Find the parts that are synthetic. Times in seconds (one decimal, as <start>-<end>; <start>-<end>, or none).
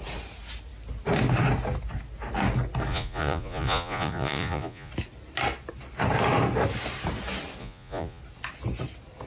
2.9-4.9; 7.6-8.2